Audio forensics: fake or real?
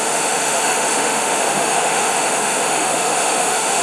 fake